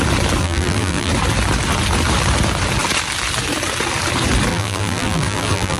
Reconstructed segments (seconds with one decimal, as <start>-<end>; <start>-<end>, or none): 0.4-1.1; 4.5-5.8